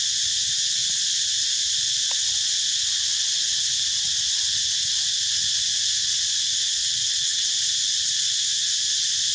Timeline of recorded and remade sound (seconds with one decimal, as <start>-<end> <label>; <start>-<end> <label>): 0.0-6.8 recorded; 6.8-7.5 remade; 7.5-9.3 recorded